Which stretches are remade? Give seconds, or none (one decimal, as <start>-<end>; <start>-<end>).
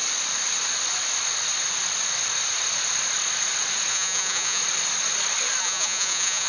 3.9-4.6; 5.6-6.5